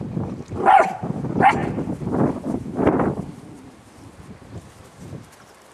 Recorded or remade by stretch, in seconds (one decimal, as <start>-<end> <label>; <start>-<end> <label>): 0.0-5.7 recorded